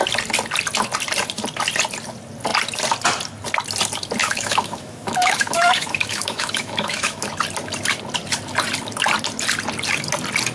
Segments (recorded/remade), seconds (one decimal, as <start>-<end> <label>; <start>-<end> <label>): 0.0-4.2 recorded; 4.2-7.3 remade; 7.3-10.5 recorded